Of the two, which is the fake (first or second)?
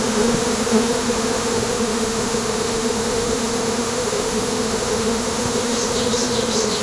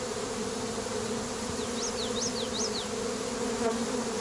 first